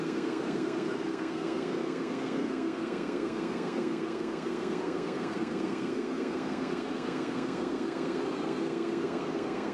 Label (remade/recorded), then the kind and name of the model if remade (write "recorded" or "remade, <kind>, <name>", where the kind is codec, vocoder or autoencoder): remade, codec, SNAC